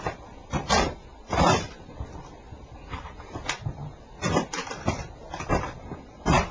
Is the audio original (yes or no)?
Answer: no